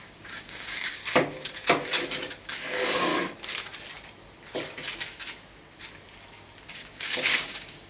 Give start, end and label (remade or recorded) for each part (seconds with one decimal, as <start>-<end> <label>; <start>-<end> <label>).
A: 0.0-1.0 remade; 1.0-2.4 recorded; 2.4-3.1 remade; 3.1-6.7 recorded; 6.7-7.9 remade